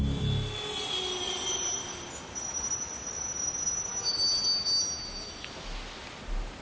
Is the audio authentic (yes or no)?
yes